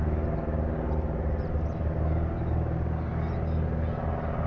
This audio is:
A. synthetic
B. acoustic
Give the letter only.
B